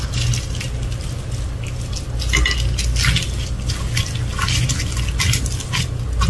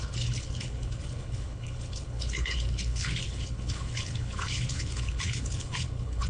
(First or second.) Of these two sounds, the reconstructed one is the second